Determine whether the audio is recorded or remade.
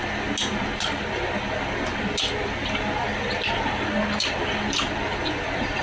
recorded